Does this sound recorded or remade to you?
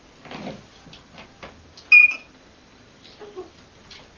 recorded